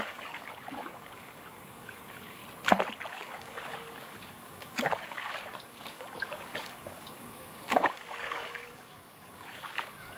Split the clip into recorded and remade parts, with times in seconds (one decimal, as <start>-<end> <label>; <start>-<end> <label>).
0.0-2.4 remade; 2.4-3.1 recorded; 3.1-10.2 remade